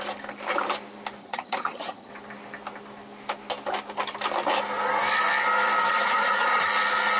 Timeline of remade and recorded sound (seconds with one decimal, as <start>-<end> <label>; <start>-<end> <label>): 0.0-1.2 recorded; 1.2-2.1 remade; 2.1-5.8 recorded; 5.8-6.7 remade; 6.7-7.2 recorded